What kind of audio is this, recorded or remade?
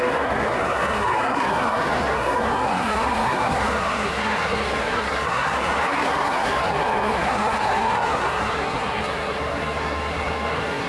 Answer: remade